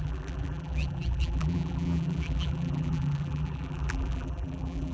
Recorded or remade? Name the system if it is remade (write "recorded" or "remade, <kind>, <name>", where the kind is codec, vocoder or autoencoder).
remade, vocoder, BigVGAN v2